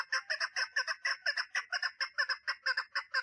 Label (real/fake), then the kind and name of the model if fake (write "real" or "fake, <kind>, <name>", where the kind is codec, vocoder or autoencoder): real